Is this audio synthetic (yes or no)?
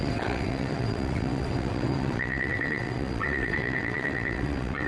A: yes